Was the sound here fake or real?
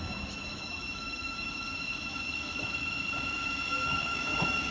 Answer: fake